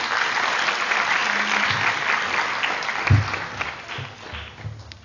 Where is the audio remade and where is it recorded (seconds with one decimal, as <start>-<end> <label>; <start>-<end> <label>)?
0.0-5.0 recorded